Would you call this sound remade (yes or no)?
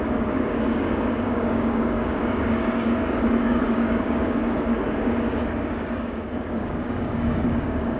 yes